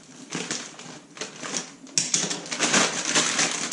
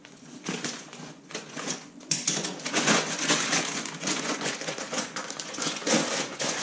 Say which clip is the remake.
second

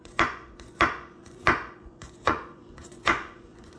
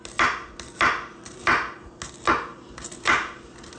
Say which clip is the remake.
first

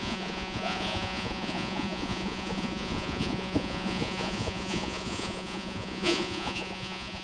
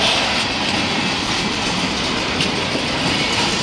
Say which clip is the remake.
first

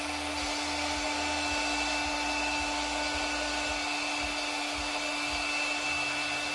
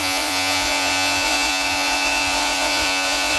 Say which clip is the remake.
second